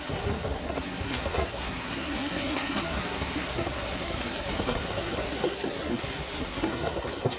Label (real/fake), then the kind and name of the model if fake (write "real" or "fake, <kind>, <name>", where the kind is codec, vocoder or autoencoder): fake, codec, SNAC